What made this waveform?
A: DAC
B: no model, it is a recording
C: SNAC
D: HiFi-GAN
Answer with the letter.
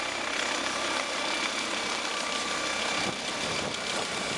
B